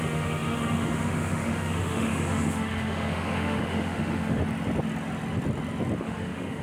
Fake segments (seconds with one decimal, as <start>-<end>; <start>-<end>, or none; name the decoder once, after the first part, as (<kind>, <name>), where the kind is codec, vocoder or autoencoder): 0.0-4.4 (autoencoder, DAC-VAE); 6.0-6.6